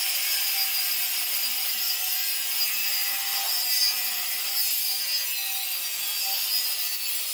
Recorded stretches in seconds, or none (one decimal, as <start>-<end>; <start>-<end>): 0.0-7.3